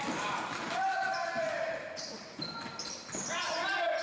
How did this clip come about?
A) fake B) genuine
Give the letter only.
A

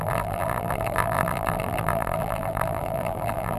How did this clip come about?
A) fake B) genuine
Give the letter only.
A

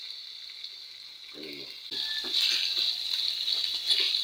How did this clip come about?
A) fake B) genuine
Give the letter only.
B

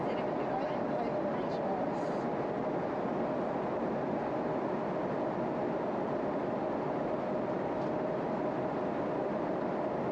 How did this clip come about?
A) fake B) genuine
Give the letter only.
B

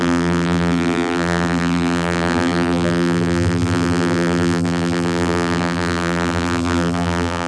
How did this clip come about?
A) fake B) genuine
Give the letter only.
A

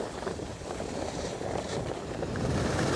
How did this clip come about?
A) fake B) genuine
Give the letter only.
A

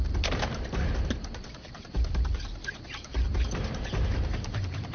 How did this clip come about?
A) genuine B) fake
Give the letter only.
B